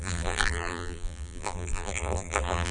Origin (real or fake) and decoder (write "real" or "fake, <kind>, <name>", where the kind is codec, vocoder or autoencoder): fake, vocoder, BigVGAN v2